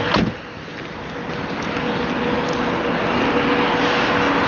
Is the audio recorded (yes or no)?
yes